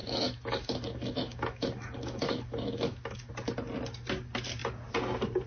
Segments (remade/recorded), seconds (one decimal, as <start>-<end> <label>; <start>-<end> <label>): 0.0-3.3 remade; 3.3-5.5 recorded